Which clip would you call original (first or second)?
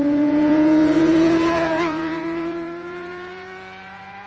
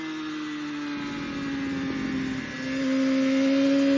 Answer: second